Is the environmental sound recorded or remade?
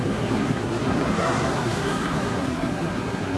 remade